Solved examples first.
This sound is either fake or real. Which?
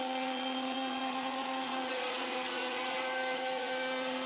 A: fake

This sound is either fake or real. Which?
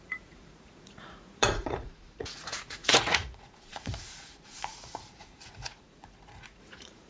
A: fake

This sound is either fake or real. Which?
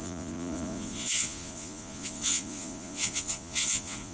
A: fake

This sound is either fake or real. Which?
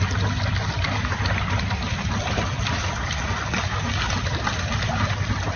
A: real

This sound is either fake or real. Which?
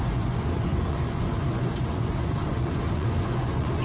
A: fake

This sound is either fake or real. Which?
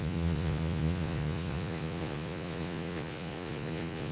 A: fake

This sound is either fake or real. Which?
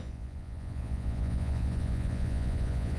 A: fake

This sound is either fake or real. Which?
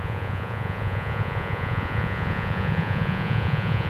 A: fake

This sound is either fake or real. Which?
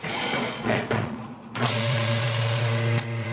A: fake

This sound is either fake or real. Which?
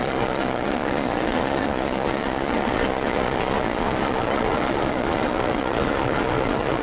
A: fake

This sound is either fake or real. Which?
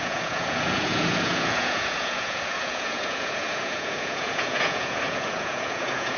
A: fake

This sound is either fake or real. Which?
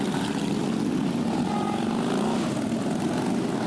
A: real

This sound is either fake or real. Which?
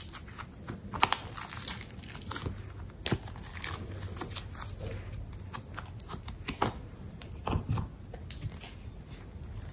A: real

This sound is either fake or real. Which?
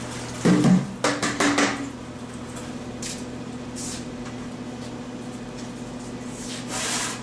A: real